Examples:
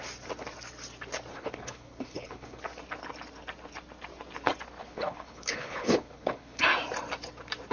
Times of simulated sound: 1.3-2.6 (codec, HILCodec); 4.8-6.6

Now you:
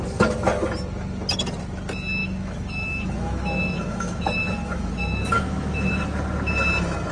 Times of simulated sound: 2.2-5.9 (autoencoder, DAC-VAE)